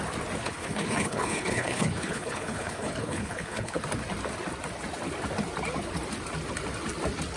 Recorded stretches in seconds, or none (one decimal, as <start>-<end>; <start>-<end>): 0.0-0.4; 3.8-7.4